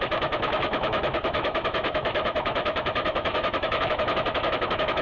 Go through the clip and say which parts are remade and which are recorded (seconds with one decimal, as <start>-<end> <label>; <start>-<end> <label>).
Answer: 0.0-5.0 remade